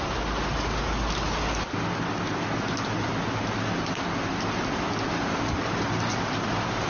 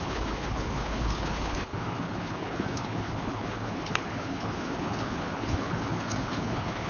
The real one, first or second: first